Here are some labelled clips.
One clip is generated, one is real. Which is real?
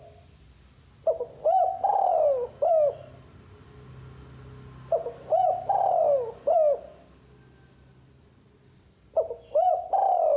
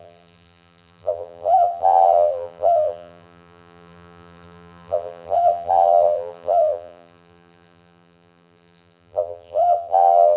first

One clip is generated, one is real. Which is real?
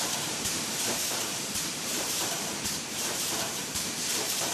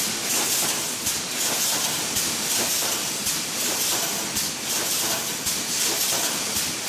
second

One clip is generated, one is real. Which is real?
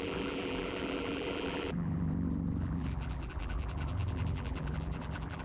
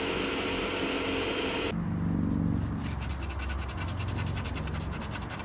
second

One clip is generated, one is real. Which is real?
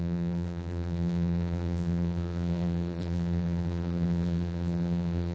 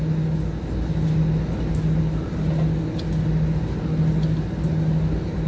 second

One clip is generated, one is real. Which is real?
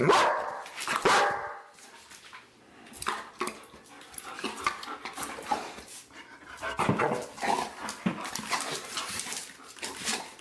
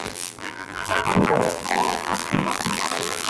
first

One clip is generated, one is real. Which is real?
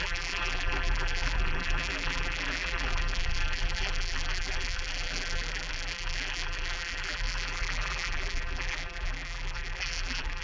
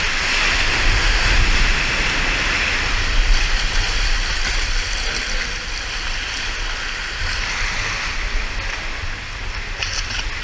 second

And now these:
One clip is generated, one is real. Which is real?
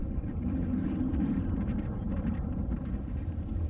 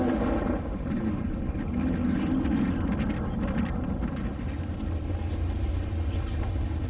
second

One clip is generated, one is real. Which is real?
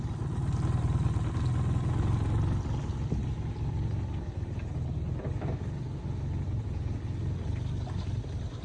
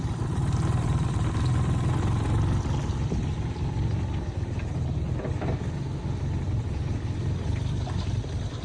first